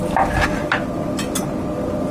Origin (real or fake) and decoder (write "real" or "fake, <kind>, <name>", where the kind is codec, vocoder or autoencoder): real